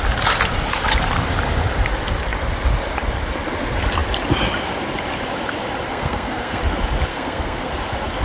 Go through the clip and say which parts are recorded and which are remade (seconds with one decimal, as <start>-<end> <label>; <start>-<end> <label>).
0.0-5.9 recorded; 5.9-6.6 remade; 6.6-7.1 recorded; 7.1-7.7 remade; 7.7-8.2 recorded